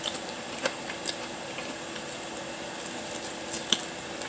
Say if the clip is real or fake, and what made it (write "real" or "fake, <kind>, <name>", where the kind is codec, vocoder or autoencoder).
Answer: real